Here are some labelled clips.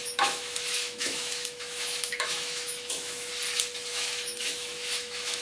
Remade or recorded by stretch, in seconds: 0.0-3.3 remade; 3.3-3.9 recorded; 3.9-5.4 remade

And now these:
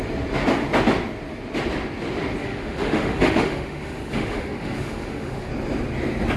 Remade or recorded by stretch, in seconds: 0.0-2.4 recorded; 2.4-5.5 remade; 5.5-6.4 recorded

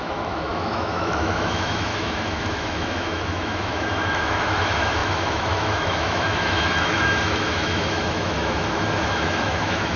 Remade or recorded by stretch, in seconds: 0.0-10.0 remade

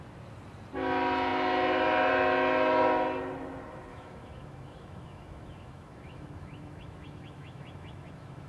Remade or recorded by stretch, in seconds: 0.0-3.9 recorded; 3.9-8.5 remade

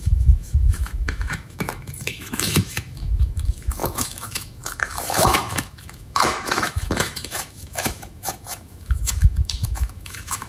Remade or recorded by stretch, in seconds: 0.0-10.5 remade

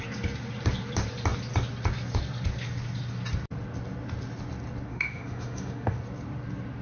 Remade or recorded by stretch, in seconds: 0.0-4.9 recorded; 4.9-6.0 remade; 6.0-6.8 recorded